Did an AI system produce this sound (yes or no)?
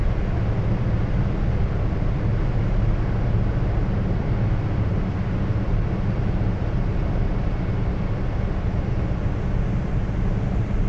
no